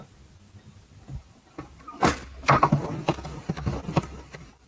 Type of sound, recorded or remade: recorded